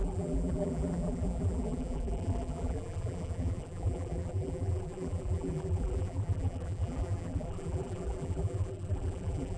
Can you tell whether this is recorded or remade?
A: remade